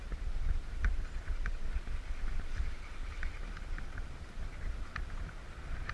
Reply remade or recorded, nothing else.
recorded